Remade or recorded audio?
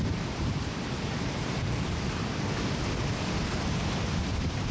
recorded